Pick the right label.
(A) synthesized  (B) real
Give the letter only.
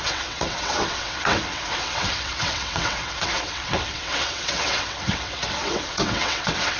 A